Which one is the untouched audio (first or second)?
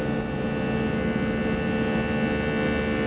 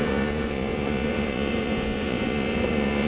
first